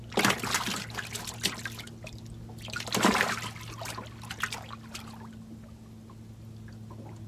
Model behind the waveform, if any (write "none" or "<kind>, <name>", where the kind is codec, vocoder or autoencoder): none